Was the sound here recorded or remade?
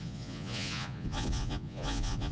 remade